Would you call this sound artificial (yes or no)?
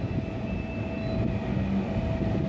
no